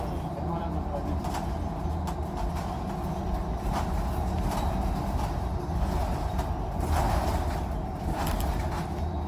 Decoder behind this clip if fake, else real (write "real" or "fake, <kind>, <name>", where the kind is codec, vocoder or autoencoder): real